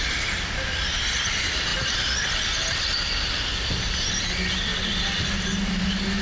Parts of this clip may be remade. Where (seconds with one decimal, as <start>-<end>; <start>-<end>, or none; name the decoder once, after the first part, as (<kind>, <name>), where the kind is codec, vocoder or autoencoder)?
none